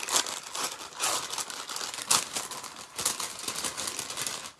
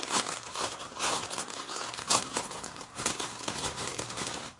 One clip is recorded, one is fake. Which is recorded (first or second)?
first